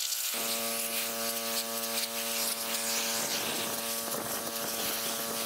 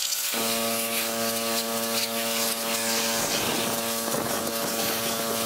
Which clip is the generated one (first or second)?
second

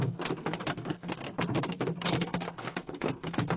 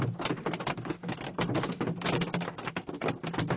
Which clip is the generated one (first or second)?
first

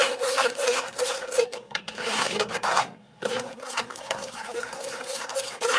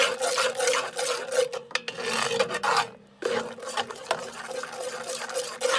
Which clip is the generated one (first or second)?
first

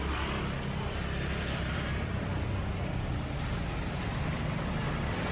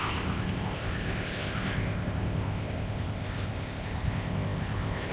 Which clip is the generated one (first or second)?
second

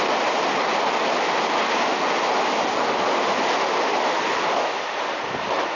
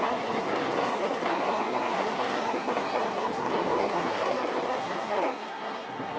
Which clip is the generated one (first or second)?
second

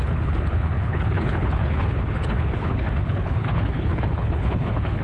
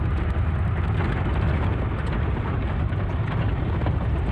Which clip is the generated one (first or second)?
first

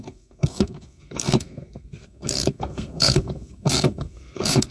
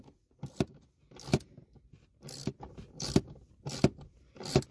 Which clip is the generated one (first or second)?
first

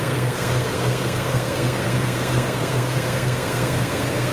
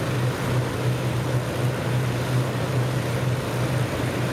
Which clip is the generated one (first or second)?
first